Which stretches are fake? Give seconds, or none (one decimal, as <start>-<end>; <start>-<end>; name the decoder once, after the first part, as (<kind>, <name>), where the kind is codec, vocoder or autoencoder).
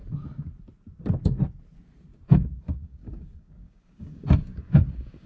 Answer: 2.3-5.3 (codec, DAC)